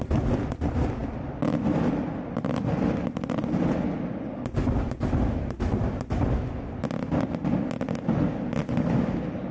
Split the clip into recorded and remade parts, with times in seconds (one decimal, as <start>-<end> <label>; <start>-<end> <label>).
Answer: 0.0-9.5 recorded